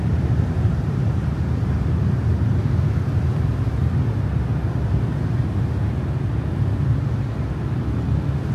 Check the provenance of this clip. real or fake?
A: real